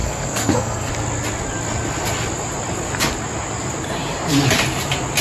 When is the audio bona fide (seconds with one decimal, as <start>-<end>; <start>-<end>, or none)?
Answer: 0.9-5.2